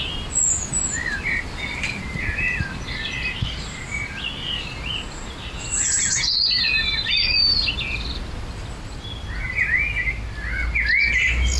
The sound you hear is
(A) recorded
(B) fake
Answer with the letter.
A